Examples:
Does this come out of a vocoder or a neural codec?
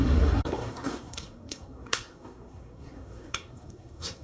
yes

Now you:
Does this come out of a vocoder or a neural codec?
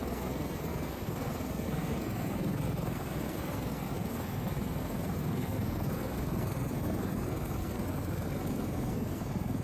yes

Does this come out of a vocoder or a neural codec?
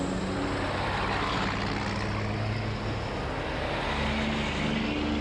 no